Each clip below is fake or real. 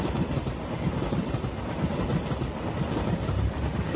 fake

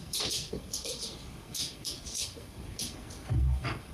fake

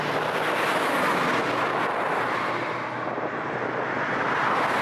real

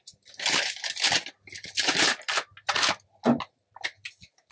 real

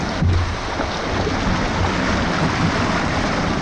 real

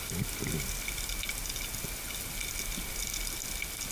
real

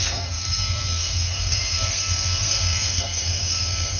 fake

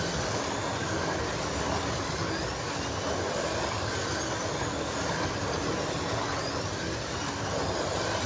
real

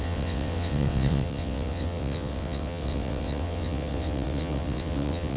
fake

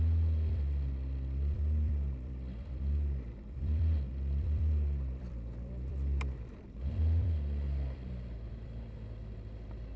fake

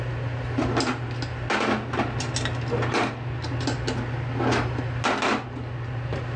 real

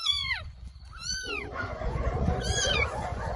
fake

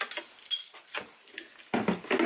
real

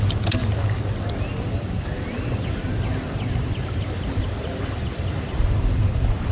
real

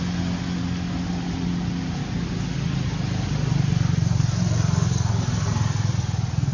real